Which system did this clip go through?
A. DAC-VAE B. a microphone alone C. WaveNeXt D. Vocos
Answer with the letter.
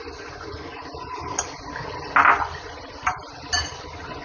B